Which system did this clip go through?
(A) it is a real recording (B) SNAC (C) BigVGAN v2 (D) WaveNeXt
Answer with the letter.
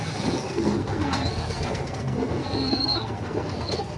B